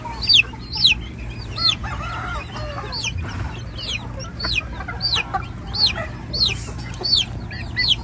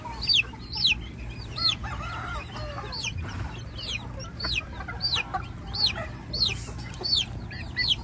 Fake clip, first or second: second